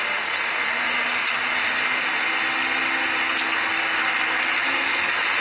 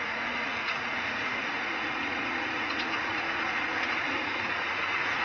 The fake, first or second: second